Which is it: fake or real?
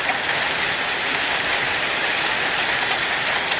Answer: real